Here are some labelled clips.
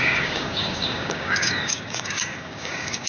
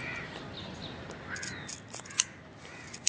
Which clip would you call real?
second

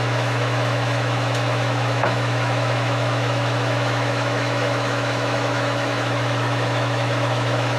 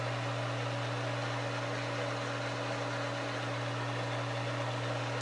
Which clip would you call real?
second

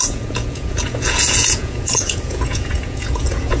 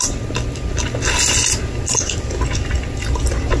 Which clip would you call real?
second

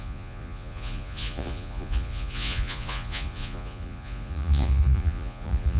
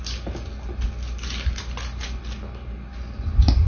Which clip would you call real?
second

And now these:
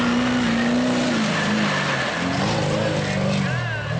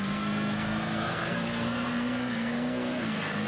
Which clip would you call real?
first